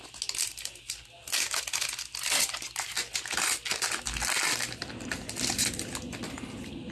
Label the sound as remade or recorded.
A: recorded